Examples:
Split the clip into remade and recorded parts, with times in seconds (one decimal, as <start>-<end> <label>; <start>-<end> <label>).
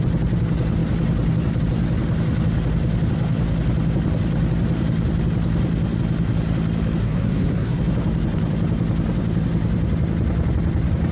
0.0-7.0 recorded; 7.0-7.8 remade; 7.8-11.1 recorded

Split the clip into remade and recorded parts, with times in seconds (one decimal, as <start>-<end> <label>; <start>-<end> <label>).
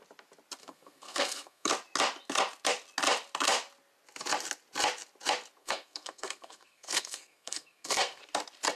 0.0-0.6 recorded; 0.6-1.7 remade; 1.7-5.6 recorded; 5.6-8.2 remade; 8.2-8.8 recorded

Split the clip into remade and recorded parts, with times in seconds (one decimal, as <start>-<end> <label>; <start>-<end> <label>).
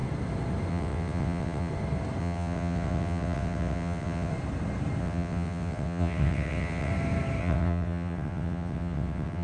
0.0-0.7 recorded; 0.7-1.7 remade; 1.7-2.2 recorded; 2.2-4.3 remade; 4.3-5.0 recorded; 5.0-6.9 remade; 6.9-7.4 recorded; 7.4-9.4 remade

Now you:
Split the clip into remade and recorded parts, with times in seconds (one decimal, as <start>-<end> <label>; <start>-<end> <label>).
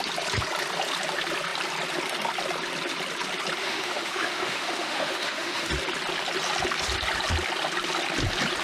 0.0-3.6 recorded; 3.6-5.7 remade; 5.7-8.6 recorded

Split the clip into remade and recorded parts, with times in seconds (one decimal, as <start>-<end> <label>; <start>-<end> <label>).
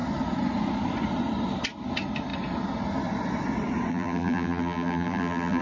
0.0-3.9 recorded; 3.9-5.6 remade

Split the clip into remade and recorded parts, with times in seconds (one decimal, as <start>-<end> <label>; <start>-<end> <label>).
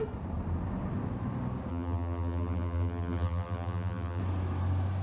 0.0-1.7 recorded; 1.7-4.2 remade; 4.2-5.0 recorded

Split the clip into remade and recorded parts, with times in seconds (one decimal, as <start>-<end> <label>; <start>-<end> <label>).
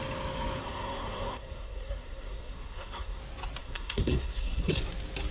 0.0-0.6 recorded; 0.6-3.2 remade; 3.2-3.6 recorded; 3.6-4.8 remade; 4.8-5.3 recorded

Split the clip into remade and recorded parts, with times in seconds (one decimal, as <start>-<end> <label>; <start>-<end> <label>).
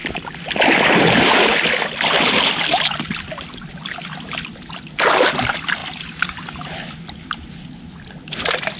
0.0-8.8 recorded